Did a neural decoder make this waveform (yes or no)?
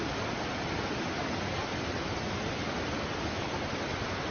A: no